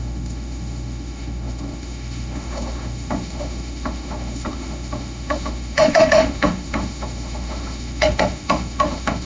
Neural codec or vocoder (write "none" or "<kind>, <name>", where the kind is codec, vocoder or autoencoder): autoencoder, DAC-VAE